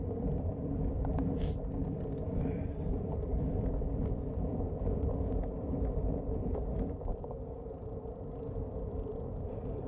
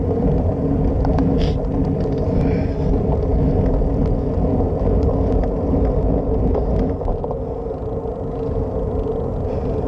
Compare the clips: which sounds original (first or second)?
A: second